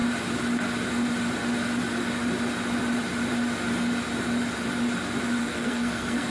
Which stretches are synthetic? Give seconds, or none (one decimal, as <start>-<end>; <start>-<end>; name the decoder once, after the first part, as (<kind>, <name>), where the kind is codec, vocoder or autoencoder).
5.4-6.3 (codec, SNAC)